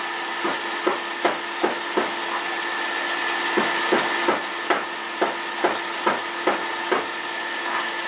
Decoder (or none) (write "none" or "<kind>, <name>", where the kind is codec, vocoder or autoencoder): none